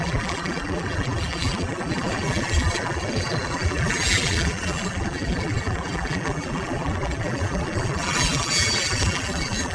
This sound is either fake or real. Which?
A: fake